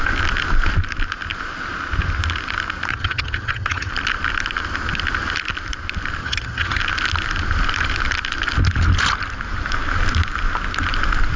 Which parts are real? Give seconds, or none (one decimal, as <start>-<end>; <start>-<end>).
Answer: 0.0-2.9; 3.9-6.2; 6.8-11.4